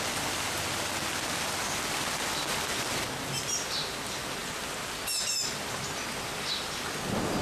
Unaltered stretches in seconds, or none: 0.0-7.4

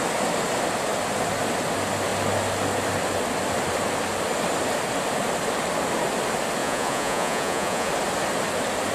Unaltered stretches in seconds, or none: 0.0-6.6; 7.9-8.9

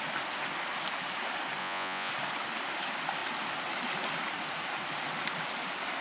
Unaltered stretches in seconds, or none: 0.0-1.6; 2.1-6.0

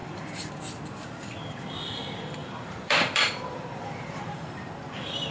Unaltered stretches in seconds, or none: 0.5-2.4; 4.7-5.3